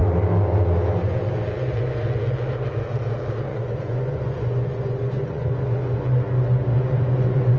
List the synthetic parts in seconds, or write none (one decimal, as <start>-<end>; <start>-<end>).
3.5-6.0; 6.7-7.6